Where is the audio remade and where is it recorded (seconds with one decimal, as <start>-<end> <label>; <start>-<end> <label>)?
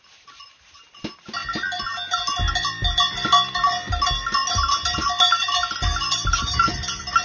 0.0-7.2 recorded